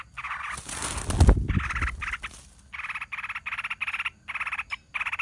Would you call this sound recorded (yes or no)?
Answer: yes